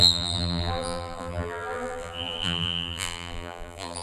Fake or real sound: fake